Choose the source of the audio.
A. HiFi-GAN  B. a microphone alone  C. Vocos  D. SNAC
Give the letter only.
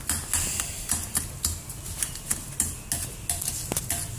B